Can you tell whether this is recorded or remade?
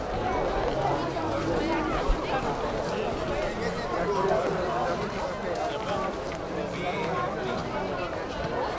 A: recorded